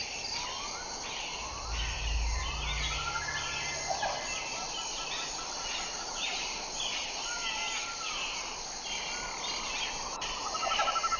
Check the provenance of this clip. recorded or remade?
recorded